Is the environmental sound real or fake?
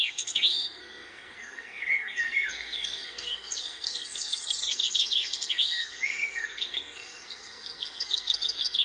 fake